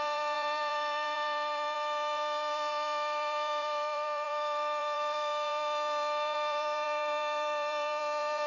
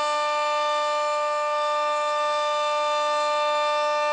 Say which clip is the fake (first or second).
first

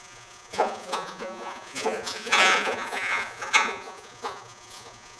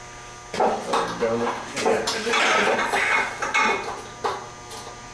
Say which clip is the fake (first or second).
first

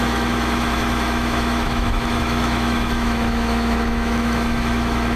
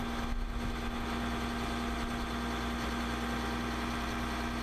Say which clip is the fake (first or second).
first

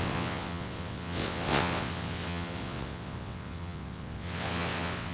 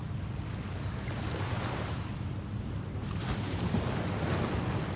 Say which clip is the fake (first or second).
first